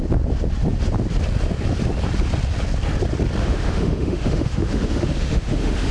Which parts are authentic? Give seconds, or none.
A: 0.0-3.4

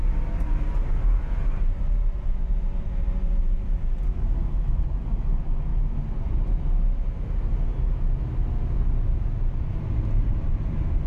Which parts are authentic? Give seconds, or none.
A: 5.7-10.3

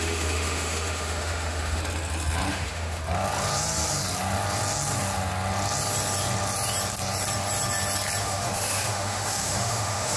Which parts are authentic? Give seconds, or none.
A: 1.8-2.5; 3.0-8.2

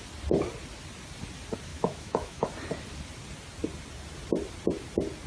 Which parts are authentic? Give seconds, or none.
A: 0.0-1.7; 2.5-5.3

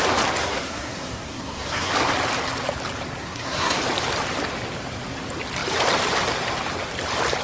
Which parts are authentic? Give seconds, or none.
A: 0.0-0.4; 1.9-3.2; 3.8-7.4

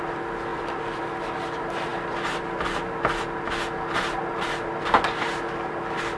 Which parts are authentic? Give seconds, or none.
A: 0.0-6.2

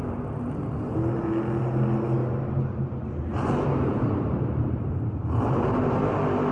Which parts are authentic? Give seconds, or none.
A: 0.0-2.2; 6.1-6.5

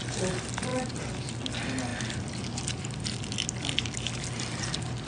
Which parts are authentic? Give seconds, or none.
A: 0.0-0.7; 1.3-5.1